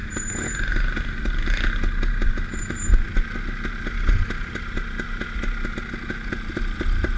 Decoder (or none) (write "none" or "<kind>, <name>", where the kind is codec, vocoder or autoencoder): none